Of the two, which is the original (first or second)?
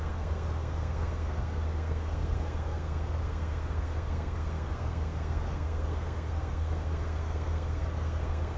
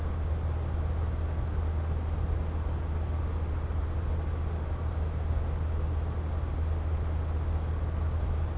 second